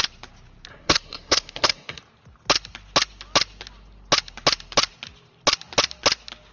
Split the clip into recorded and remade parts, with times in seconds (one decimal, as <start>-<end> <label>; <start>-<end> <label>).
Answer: 0.0-0.7 recorded; 0.7-2.0 remade; 2.0-6.5 recorded